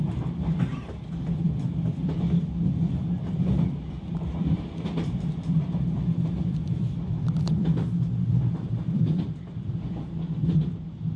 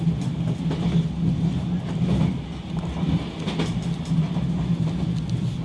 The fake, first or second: first